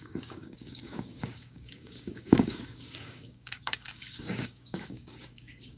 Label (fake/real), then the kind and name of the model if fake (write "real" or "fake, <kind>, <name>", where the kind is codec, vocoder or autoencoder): fake, codec, DAC